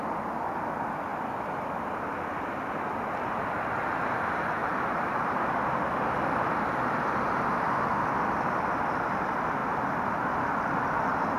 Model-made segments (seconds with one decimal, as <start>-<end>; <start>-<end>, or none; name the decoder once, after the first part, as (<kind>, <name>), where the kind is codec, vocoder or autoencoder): 4.6-6.3 (vocoder, BigVGAN v2)

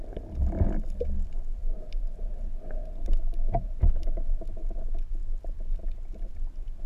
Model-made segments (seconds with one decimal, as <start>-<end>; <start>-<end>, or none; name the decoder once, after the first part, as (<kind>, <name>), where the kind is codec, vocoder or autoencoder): none

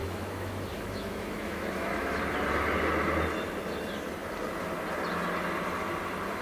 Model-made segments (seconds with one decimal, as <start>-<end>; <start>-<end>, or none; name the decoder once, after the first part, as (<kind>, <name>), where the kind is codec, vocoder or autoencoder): 0.0-2.2 (autoencoder, DAC-VAE)

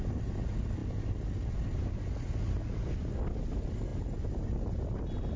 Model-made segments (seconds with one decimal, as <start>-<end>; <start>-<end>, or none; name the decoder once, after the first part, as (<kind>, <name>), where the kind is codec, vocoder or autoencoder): none